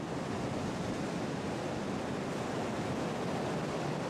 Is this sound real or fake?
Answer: real